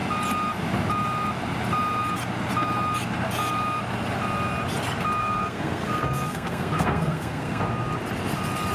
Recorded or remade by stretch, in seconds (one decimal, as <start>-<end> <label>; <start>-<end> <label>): 0.0-5.2 recorded; 5.2-7.6 remade; 7.6-8.7 recorded